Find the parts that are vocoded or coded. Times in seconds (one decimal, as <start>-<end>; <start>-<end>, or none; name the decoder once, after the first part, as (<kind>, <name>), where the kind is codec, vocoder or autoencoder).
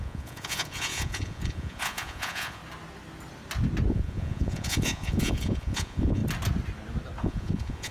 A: 0.0-2.6 (vocoder, Vocos); 3.9-6.2; 7.2-7.9